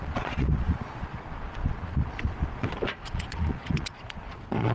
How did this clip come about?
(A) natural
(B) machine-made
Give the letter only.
B